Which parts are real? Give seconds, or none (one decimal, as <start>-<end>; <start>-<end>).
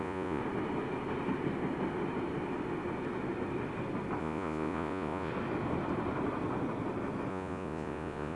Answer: 0.4-4.2; 5.3-7.3